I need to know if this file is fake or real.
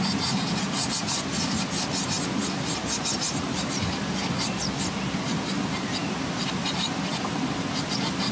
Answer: real